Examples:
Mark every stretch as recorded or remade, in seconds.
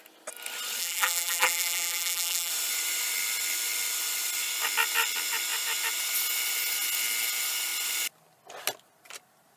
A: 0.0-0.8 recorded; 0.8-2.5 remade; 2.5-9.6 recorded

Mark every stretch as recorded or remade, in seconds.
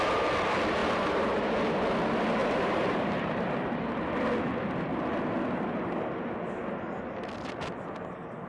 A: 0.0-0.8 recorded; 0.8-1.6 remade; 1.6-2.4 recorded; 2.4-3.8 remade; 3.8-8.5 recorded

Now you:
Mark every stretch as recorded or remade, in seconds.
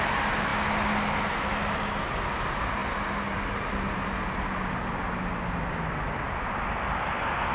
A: 0.0-7.5 recorded